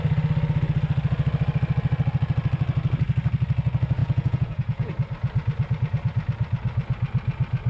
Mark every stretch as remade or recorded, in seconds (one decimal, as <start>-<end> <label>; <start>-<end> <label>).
0.0-4.0 recorded; 4.0-4.9 remade; 4.9-7.7 recorded

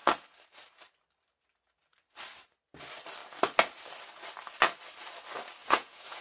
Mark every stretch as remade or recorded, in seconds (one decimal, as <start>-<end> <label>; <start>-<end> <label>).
0.0-5.6 recorded; 5.6-6.2 remade

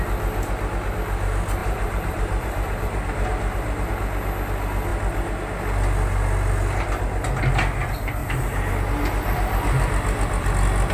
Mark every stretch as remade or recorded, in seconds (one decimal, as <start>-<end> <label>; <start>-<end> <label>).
0.0-1.6 recorded; 1.6-3.9 remade; 3.9-8.2 recorded; 8.2-8.7 remade; 8.7-10.9 recorded